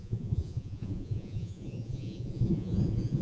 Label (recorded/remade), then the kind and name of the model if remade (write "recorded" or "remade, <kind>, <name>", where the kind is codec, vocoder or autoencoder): remade, vocoder, Vocos